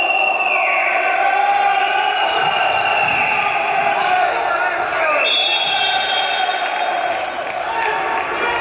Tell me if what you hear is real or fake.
real